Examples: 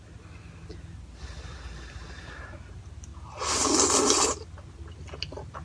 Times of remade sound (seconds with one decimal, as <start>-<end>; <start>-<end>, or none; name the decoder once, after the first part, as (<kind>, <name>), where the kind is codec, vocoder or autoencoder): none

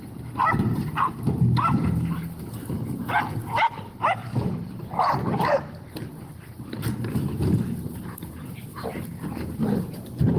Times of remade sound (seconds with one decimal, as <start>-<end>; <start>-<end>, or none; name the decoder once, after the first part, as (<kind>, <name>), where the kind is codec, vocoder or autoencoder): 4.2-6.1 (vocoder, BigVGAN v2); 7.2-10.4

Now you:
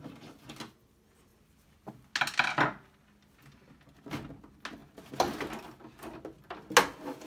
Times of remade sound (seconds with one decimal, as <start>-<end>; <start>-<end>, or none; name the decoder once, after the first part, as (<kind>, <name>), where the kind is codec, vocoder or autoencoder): none